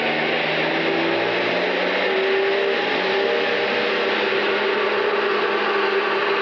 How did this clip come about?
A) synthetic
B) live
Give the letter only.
B